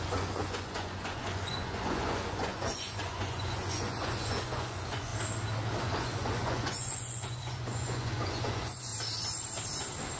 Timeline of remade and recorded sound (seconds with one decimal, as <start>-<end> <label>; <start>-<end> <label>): 0.0-5.1 remade; 5.1-5.8 recorded; 5.8-8.9 remade; 8.9-10.2 recorded